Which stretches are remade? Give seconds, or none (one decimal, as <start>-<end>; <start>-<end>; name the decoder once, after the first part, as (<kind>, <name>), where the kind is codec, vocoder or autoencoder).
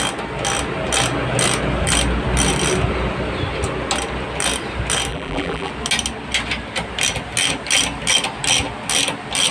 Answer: 5.1-5.7 (vocoder, BigVGAN v2)